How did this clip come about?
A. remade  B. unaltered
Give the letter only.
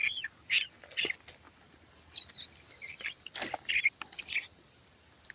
B